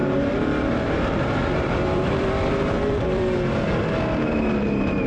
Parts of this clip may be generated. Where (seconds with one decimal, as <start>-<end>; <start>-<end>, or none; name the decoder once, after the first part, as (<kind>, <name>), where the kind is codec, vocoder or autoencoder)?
0.0-5.1 (vocoder, BigVGAN v2)